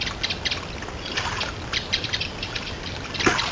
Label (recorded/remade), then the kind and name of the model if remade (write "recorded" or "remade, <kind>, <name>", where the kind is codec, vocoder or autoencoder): recorded